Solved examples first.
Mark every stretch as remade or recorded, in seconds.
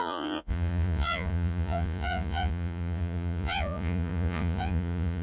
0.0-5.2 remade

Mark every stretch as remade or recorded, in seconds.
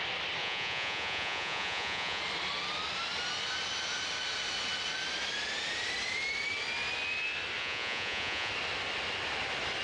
0.0-0.4 recorded; 0.4-2.2 remade; 2.2-7.6 recorded; 7.6-8.5 remade; 8.5-9.8 recorded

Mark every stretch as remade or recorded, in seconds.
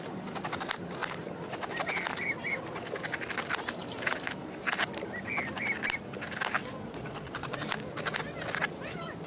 0.0-6.6 recorded; 6.6-7.6 remade; 7.6-9.3 recorded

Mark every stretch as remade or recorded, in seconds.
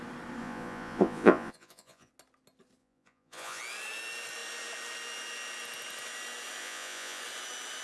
0.0-0.4 recorded; 0.4-2.1 remade; 2.1-2.8 recorded; 2.8-3.6 remade; 3.6-6.6 recorded; 6.6-7.2 remade; 7.2-7.8 recorded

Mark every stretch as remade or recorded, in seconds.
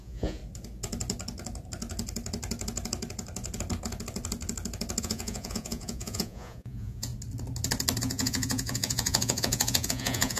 0.0-0.4 remade; 0.4-5.0 recorded; 5.0-7.1 remade; 7.1-8.0 recorded; 8.0-10.4 remade